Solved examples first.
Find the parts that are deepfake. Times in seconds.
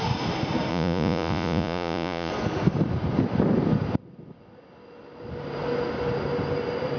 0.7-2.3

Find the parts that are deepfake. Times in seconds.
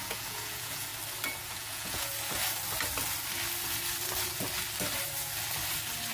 0.0-0.9; 1.5-2.1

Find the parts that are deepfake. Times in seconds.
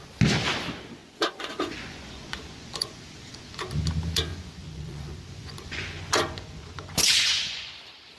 1.0-3.7; 4.3-7.7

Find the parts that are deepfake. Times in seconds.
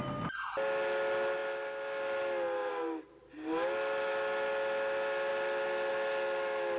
none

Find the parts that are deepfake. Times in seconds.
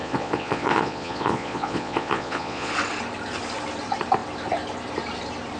0.0-2.7